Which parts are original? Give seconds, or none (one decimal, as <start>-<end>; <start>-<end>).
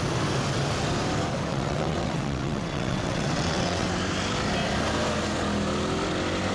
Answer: 0.0-1.5; 3.9-6.5